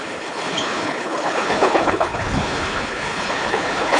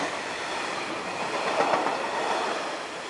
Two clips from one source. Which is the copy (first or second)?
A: first